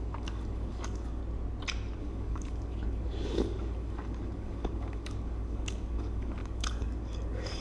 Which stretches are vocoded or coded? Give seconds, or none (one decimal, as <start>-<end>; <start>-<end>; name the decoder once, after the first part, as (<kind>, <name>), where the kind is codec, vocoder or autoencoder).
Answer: 0.0-1.2 (codec, DAC); 2.0-7.6